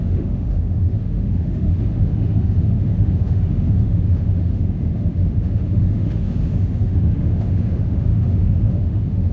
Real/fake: fake